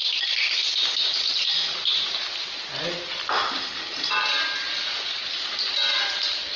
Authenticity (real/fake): real